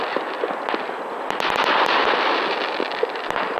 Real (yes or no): yes